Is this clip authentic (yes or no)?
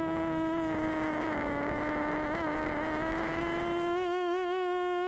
no